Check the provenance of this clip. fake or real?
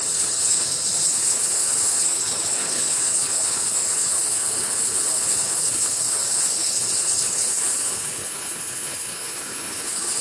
fake